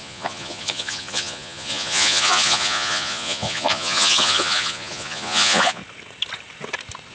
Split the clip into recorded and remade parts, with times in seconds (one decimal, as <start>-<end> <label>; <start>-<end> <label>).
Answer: 0.0-5.8 remade; 5.8-7.1 recorded

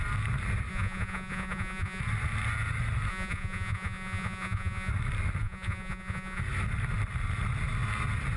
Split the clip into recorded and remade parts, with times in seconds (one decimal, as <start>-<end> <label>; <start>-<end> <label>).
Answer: 0.0-0.7 recorded; 0.7-2.0 remade; 2.0-3.1 recorded; 3.1-4.9 remade; 4.9-5.4 recorded; 5.4-6.4 remade; 6.4-8.4 recorded

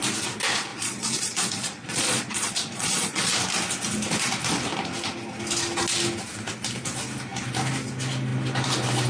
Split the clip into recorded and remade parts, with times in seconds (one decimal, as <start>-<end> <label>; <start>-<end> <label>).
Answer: 0.0-0.7 recorded; 0.7-3.3 remade; 3.3-9.1 recorded

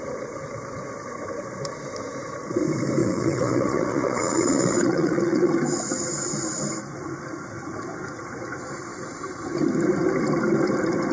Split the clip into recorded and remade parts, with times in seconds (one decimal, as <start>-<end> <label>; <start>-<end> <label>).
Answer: 0.0-3.0 recorded; 3.0-5.5 remade; 5.5-11.1 recorded

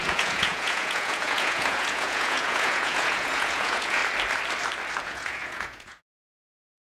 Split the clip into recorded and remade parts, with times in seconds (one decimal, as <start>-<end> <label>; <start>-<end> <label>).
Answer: 0.0-4.0 remade; 4.0-5.0 recorded; 5.0-6.8 remade